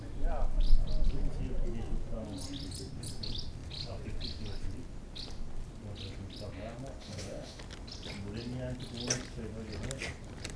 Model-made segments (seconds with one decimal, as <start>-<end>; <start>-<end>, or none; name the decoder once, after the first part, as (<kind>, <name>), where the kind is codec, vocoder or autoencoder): 7.0-7.6 (autoencoder, DAC-VAE)